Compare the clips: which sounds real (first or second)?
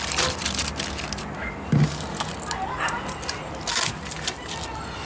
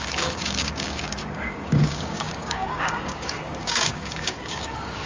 first